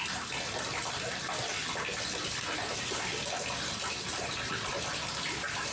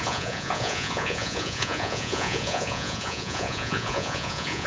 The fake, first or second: second